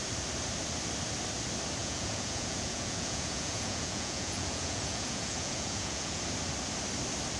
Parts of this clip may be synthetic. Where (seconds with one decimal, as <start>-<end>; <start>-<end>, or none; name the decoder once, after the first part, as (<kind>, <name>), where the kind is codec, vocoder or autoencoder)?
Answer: 1.8-6.2 (vocoder, Vocos)